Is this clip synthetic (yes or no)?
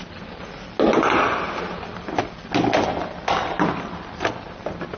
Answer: no